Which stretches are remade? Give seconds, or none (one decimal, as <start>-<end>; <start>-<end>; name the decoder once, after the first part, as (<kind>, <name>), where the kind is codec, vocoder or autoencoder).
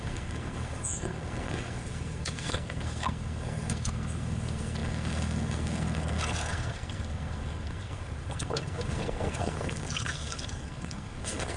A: 0.0-11.6 (codec, SNAC)